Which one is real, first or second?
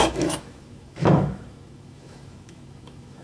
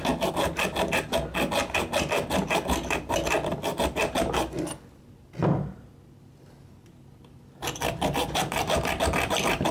second